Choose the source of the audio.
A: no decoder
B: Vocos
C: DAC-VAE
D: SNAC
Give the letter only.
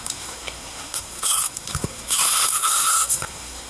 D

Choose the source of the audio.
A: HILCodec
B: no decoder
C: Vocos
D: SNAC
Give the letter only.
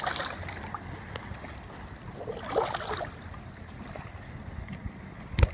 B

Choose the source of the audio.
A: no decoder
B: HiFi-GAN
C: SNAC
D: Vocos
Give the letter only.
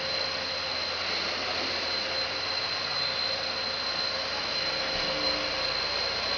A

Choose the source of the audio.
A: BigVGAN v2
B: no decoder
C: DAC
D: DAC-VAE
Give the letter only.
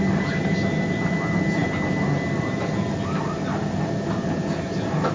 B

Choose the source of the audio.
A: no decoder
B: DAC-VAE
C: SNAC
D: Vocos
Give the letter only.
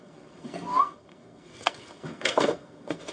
C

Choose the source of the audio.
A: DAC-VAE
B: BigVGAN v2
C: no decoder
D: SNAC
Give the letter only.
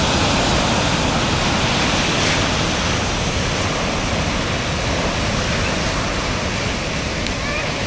C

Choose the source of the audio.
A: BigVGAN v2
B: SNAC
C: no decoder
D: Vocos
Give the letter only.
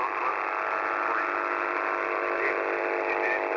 C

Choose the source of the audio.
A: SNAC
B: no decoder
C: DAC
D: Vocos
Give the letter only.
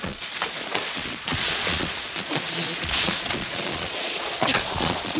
D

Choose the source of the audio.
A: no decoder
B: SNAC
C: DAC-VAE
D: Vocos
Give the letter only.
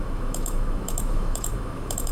C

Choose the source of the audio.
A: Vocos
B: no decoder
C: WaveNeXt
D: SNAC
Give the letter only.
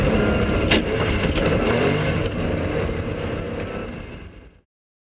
B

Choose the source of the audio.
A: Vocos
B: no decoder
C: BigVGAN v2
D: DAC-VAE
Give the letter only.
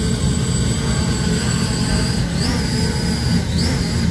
B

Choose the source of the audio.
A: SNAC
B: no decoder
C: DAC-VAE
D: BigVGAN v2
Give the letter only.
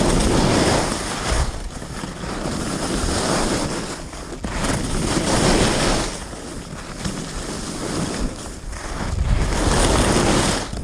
B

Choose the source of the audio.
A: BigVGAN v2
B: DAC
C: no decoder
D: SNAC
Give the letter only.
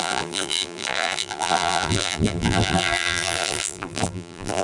A